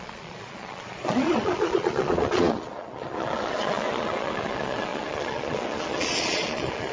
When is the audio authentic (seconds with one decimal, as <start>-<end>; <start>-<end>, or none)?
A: none